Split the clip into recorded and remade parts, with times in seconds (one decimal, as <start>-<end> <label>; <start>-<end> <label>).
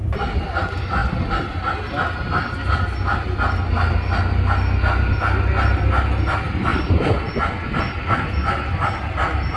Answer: 0.0-9.6 recorded